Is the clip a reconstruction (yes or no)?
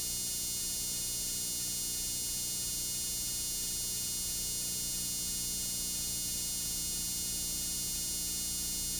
no